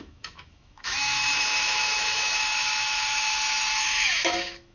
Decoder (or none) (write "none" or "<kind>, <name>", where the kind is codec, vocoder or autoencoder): autoencoder, DAC-VAE